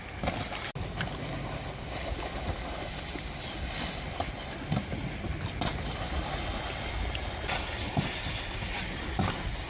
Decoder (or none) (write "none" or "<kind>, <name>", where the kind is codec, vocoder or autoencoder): none